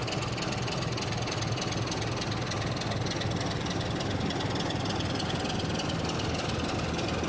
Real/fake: real